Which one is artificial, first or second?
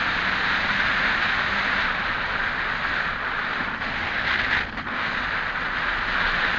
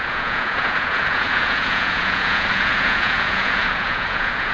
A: second